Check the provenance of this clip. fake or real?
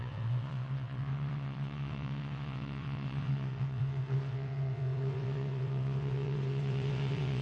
fake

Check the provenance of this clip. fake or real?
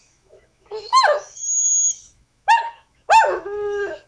fake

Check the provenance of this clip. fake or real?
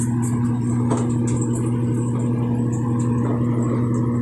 real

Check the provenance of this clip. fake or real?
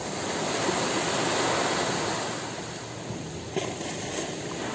real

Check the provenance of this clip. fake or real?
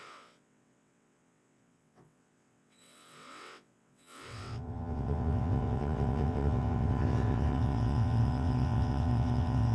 fake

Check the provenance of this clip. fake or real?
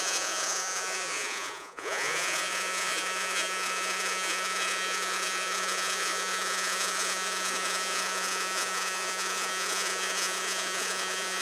fake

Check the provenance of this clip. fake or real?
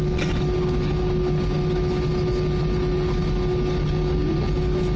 real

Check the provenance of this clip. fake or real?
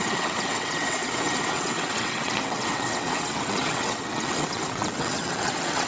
fake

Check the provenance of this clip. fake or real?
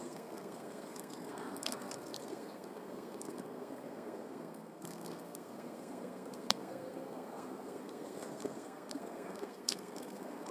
fake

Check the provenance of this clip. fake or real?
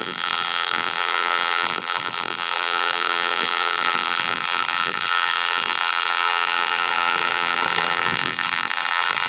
fake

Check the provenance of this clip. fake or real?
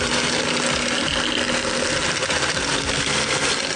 real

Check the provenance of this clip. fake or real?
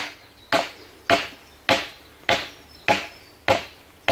real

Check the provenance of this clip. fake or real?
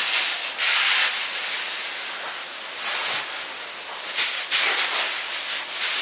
real